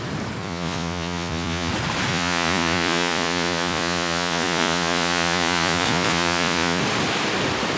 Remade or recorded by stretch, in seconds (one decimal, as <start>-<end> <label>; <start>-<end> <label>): 0.0-0.4 recorded; 0.4-1.7 remade; 1.7-2.1 recorded; 2.1-6.8 remade; 6.8-7.8 recorded